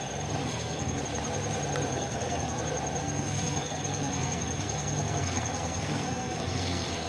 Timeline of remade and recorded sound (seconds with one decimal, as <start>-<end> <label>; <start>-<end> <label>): 0.0-0.4 recorded; 0.4-1.0 remade; 1.0-1.9 recorded; 1.9-2.6 remade; 2.6-3.0 recorded; 3.0-7.1 remade